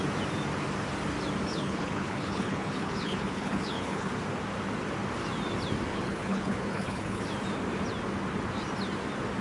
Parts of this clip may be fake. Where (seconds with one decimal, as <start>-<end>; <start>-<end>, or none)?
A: 1.5-4.1; 5.9-7.2